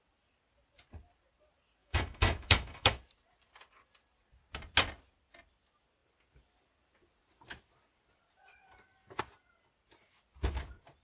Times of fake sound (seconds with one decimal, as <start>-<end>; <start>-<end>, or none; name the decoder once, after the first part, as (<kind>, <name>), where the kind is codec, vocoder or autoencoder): 1.8-3.0 (autoencoder, DAC-VAE)